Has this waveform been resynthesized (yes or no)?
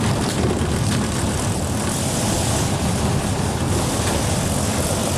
no